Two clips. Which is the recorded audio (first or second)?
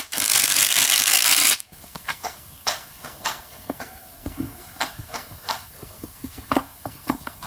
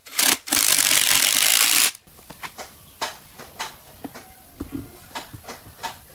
second